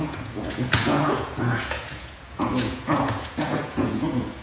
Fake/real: fake